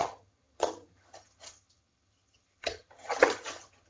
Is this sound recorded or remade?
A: remade